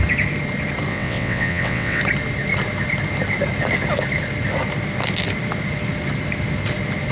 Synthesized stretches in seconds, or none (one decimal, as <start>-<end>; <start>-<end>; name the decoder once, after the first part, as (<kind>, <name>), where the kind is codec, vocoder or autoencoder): 0.9-2.0 (vocoder, WaveNeXt)

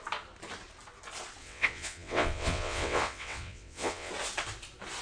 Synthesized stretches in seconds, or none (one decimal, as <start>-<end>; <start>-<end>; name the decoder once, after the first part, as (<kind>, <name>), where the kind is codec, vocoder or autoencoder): 1.4-4.1 (vocoder, WaveNeXt)

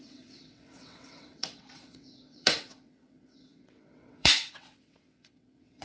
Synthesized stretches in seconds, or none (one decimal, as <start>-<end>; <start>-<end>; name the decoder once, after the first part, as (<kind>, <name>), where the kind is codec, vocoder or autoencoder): 0.0-5.8 (vocoder, WaveNeXt)

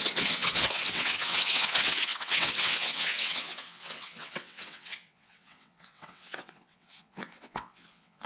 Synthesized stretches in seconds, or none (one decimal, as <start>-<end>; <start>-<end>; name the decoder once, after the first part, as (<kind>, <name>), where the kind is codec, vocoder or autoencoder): 0.0-8.3 (vocoder, WaveNeXt)

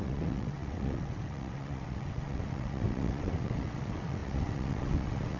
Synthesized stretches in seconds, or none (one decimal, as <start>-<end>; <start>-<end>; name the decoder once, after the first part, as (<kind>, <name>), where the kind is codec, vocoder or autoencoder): 0.0-5.4 (vocoder, WaveNeXt)

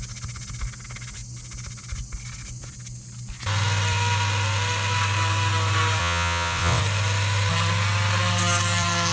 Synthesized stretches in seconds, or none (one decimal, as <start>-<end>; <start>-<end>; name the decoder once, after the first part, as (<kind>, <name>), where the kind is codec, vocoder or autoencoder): 6.0-6.8 (vocoder, WaveNeXt)